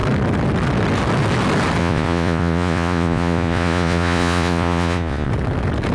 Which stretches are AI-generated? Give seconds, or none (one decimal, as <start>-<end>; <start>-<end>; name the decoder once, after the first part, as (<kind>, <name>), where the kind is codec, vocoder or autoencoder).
1.8-5.3 (vocoder, Vocos)